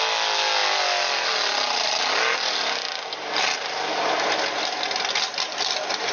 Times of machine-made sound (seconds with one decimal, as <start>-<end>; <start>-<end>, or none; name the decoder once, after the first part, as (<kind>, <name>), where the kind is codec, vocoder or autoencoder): none